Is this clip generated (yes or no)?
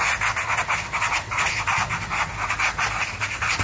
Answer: no